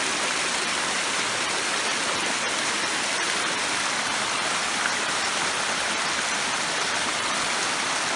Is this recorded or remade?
recorded